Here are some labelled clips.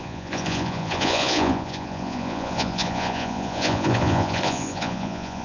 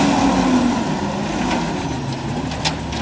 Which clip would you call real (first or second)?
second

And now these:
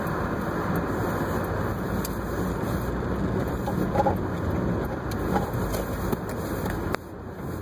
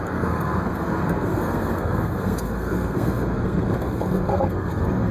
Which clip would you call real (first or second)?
first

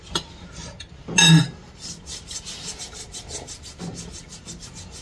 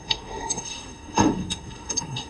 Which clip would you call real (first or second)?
first